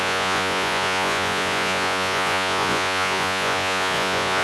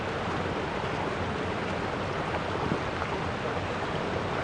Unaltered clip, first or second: second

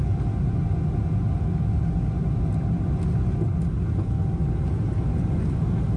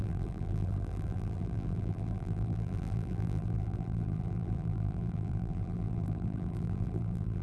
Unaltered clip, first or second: first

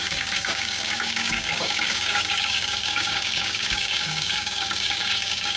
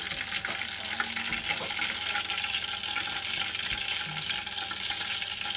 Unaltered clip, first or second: second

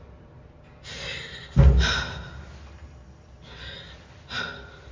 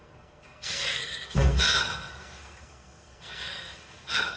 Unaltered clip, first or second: first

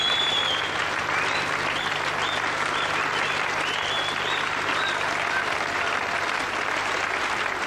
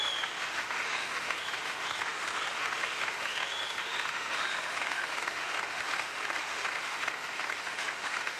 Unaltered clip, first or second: first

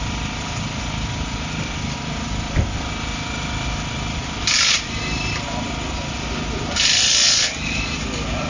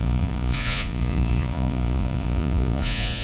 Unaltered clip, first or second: first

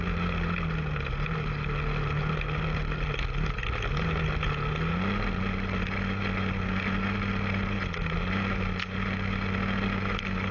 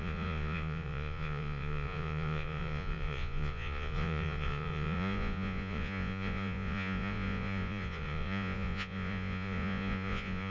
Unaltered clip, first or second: first